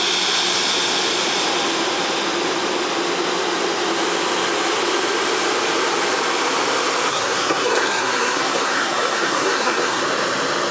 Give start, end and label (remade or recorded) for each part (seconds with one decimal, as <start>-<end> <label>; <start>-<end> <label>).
0.0-7.1 recorded; 7.1-10.0 remade; 10.0-10.7 recorded